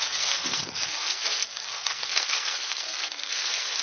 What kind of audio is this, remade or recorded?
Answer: remade